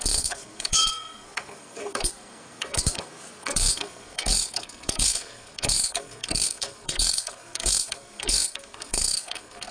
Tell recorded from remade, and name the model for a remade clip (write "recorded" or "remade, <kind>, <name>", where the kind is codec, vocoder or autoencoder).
remade, codec, SNAC